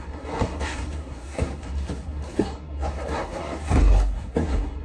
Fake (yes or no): yes